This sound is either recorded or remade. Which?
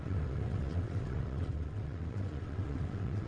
remade